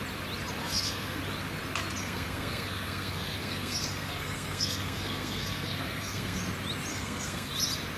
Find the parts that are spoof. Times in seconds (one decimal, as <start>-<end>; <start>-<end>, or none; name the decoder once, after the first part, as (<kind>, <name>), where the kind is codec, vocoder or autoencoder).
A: 0.6-1.2 (codec, SNAC); 2.0-6.4; 6.9-7.5